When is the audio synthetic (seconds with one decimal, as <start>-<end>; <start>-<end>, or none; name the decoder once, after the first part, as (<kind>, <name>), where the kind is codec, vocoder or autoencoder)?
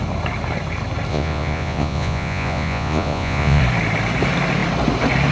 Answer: 1.1-3.6 (vocoder, Vocos)